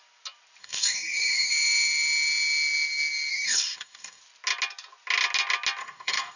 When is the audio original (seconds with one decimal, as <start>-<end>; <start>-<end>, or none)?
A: 0.0-0.6; 1.5-3.3; 4.2-5.8